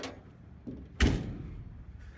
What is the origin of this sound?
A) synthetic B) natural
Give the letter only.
B